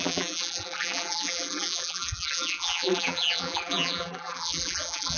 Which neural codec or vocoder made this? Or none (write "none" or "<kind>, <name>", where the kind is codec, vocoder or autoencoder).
vocoder, BigVGAN v2